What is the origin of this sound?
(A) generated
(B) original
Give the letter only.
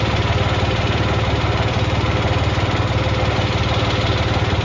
B